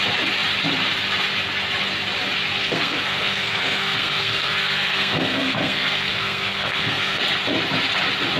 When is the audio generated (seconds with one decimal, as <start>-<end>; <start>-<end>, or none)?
2.6-7.2